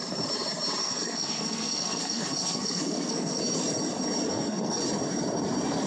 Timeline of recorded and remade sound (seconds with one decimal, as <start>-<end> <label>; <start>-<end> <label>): 0.0-0.8 recorded; 0.8-3.4 remade; 3.4-4.3 recorded; 4.3-4.8 remade; 4.8-5.9 recorded